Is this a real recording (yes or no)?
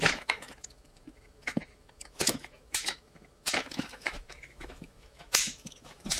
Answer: no